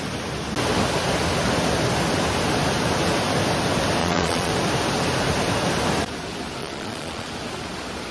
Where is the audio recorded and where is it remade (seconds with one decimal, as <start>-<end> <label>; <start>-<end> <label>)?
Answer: 0.0-4.0 recorded; 4.0-4.5 remade; 4.5-6.6 recorded; 6.6-7.3 remade; 7.3-8.1 recorded